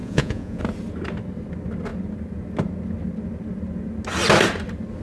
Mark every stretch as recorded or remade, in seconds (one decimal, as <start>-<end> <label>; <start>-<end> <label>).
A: 0.0-0.6 remade; 0.6-5.0 recorded